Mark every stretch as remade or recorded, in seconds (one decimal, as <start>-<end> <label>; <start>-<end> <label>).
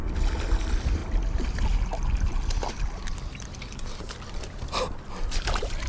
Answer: 0.0-5.9 recorded